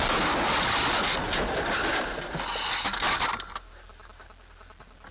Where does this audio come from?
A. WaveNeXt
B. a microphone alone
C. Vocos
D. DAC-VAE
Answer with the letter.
B